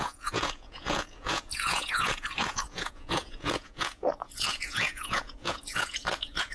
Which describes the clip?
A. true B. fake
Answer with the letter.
B